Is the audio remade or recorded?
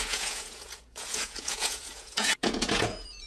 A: remade